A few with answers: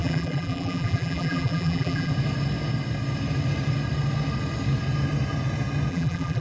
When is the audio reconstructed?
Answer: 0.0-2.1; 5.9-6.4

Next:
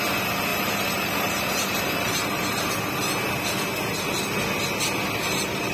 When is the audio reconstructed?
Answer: 0.5-2.7

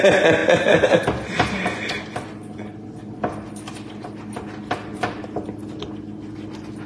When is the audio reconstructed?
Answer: none

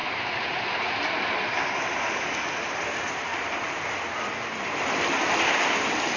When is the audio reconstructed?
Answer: 1.4-3.3; 5.6-6.2